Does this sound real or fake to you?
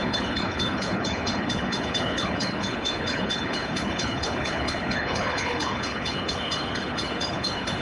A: fake